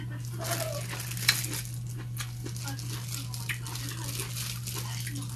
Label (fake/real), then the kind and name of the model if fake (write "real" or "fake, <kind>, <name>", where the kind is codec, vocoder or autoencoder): real